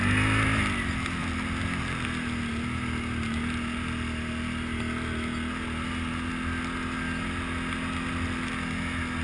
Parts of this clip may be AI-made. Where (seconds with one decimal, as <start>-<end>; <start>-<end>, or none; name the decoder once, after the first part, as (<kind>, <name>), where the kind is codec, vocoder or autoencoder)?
none